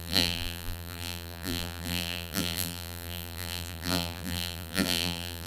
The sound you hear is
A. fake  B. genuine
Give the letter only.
A